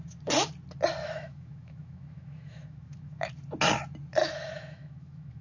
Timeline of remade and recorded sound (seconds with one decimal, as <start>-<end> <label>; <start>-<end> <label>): 0.0-1.0 recorded; 1.0-3.3 remade; 3.3-4.2 recorded; 4.2-5.4 remade